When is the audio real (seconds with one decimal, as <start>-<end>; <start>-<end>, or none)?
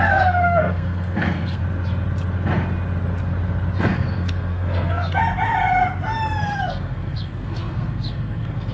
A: 1.6-3.8; 5.2-6.7